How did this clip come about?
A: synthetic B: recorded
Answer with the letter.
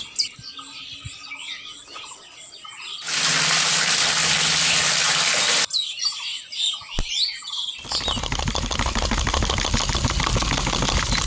B